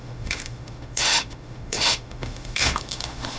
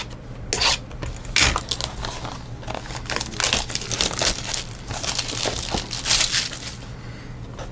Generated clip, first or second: first